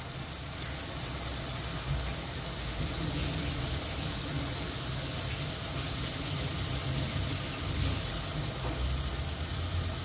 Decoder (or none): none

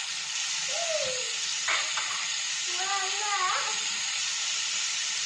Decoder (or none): none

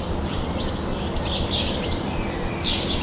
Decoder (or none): none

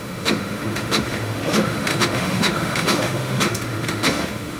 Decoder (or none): autoencoder, DAC-VAE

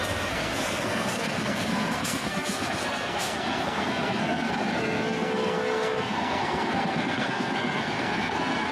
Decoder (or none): codec, SNAC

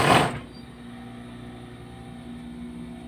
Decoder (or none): none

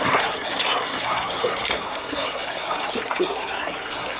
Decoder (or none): codec, SNAC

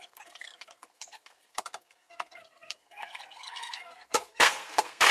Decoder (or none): codec, SNAC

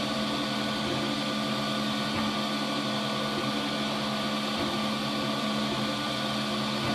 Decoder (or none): none